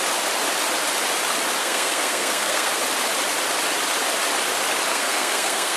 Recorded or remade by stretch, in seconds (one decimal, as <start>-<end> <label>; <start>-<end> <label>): 0.0-1.6 recorded; 1.6-2.8 remade; 2.8-4.9 recorded; 4.9-5.8 remade